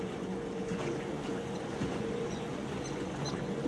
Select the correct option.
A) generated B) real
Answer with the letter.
A